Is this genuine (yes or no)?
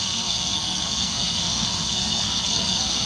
no